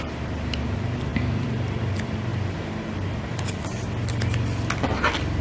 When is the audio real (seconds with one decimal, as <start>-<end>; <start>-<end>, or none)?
0.0-5.4